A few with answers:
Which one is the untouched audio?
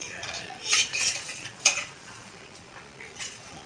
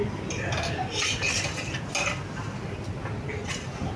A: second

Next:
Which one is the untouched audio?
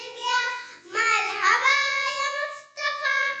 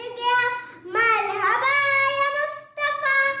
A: second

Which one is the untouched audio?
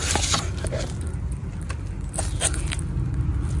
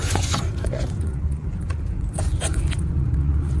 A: first